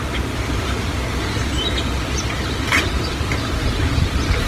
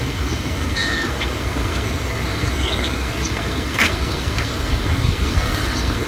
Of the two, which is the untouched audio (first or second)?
first